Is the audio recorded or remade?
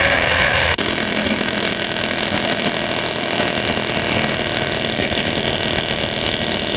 remade